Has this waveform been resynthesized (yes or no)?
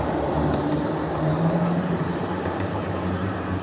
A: yes